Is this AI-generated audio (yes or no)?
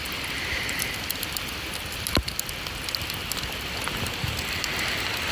no